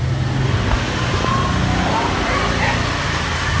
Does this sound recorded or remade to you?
recorded